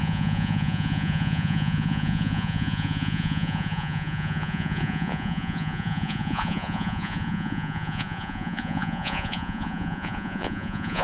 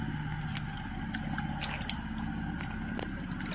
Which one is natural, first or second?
second